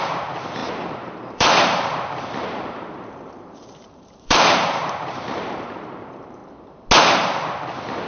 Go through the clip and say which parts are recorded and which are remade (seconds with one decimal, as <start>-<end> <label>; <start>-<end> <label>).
0.0-6.4 remade; 6.4-8.1 recorded

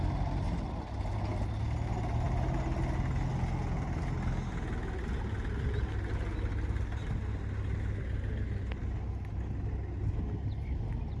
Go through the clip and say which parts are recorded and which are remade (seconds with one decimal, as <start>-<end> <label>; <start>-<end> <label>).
0.0-11.2 recorded

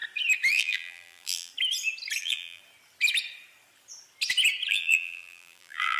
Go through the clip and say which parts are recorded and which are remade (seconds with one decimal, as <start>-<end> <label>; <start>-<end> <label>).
0.0-0.5 recorded; 0.5-1.5 remade; 1.5-2.2 recorded; 2.2-2.6 remade; 2.6-4.7 recorded; 4.7-6.0 remade

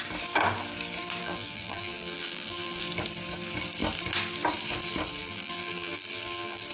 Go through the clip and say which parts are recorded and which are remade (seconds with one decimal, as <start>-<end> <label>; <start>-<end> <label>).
0.0-1.2 recorded; 1.2-2.8 remade; 2.8-5.2 recorded; 5.2-6.7 remade

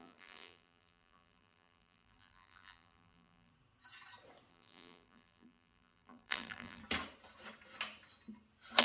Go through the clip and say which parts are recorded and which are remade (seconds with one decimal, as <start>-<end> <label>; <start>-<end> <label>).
0.0-3.5 remade; 3.5-4.5 recorded; 4.5-6.8 remade; 6.8-8.8 recorded

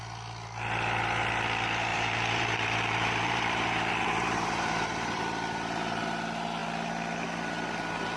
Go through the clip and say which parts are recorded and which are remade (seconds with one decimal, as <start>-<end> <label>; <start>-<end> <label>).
0.0-1.9 recorded; 1.9-5.2 remade; 5.2-8.2 recorded